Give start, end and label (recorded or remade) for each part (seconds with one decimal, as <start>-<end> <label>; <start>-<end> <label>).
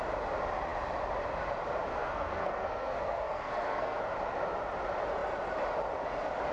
0.0-1.9 recorded; 1.9-4.0 remade; 4.0-6.5 recorded